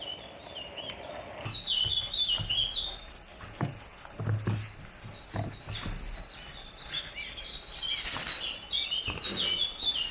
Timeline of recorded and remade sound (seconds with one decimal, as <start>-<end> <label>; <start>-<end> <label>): 0.0-10.1 recorded